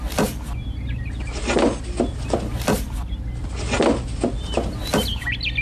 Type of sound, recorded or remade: recorded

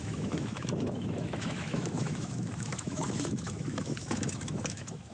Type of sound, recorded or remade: remade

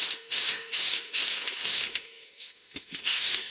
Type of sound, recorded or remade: remade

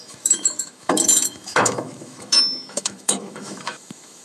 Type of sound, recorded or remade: remade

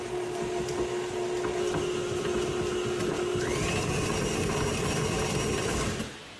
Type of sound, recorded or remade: recorded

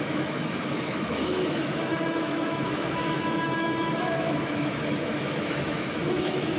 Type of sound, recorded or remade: remade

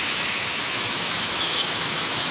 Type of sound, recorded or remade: remade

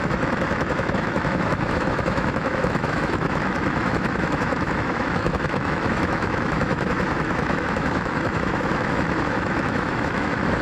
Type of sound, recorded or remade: remade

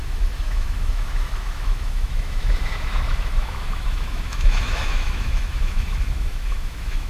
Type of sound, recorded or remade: remade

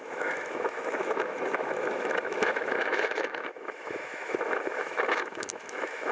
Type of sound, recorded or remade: remade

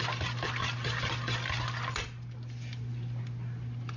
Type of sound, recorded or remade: recorded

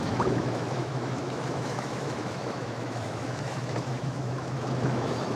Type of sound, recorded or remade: remade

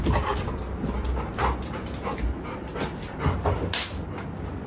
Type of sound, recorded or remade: recorded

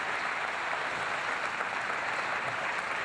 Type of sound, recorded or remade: recorded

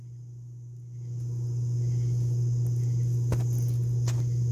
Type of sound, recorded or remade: recorded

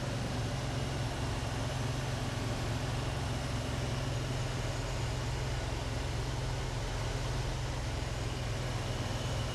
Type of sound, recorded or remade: recorded